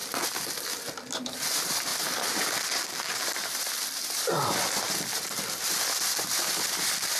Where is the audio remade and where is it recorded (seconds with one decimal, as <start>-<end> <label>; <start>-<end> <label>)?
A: 0.0-7.2 remade